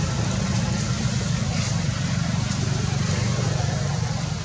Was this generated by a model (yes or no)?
no